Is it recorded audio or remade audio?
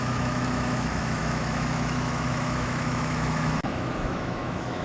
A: remade